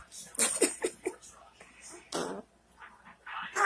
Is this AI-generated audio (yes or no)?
no